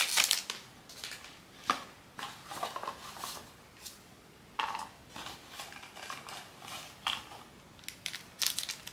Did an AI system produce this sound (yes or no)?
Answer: no